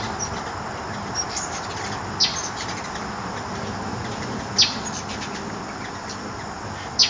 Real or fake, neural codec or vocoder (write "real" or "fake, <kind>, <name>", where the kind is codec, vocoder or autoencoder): real